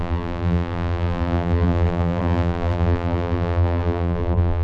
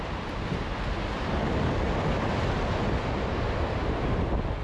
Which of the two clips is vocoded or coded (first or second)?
first